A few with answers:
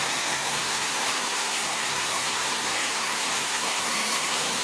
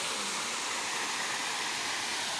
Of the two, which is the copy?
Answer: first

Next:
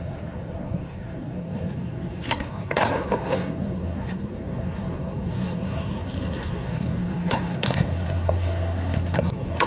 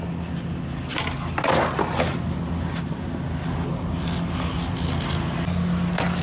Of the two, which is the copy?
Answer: first